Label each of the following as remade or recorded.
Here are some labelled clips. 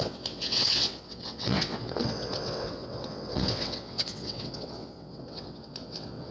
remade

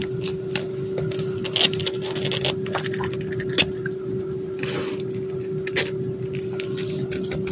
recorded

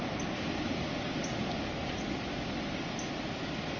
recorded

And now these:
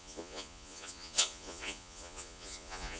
remade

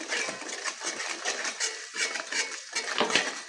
recorded